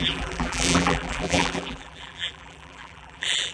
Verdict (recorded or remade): remade